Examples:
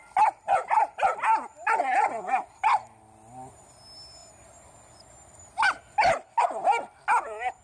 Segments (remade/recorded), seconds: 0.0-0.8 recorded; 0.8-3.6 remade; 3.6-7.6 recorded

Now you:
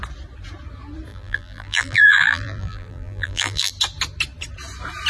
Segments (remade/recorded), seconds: 0.0-1.1 recorded; 1.1-3.7 remade; 3.7-5.1 recorded